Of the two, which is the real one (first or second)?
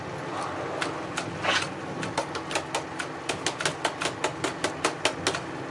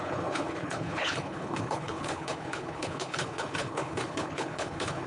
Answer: first